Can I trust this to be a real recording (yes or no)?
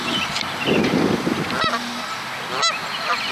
yes